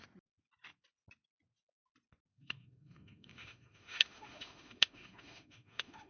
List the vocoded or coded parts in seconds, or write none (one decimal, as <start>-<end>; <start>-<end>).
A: 2.3-6.1